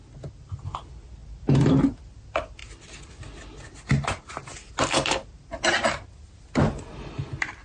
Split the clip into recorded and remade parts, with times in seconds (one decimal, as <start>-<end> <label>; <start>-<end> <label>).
0.0-7.6 recorded